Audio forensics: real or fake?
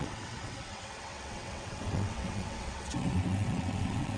fake